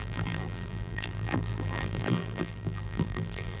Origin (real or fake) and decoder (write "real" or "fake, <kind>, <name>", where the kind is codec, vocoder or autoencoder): fake, vocoder, BigVGAN v2